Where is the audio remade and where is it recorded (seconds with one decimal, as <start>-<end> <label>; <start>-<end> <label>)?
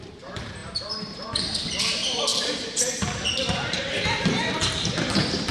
0.0-5.5 remade